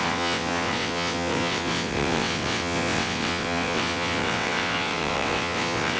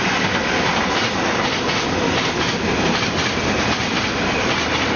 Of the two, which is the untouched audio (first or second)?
second